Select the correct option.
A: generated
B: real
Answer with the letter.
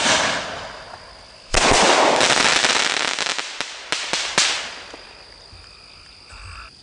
B